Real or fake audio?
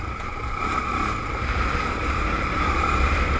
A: fake